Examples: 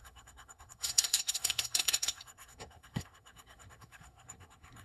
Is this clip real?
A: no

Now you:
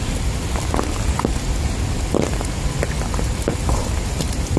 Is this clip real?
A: yes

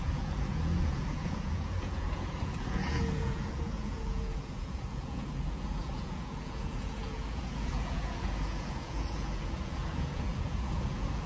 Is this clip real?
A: no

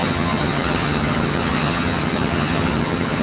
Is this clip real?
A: no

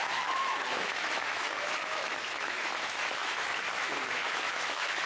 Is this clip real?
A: no